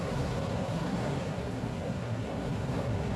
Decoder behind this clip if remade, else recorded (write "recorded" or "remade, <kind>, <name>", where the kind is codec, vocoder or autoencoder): remade, codec, SNAC